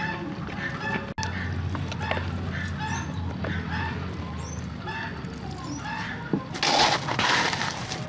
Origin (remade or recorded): recorded